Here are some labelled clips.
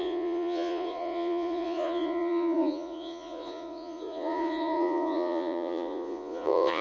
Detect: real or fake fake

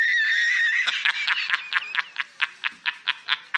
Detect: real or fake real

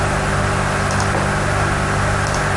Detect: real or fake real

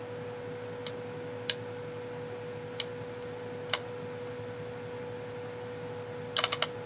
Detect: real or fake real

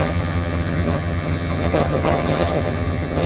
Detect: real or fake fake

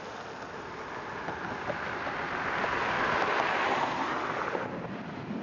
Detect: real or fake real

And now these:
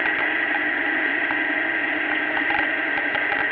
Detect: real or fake fake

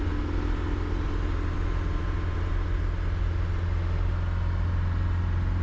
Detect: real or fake real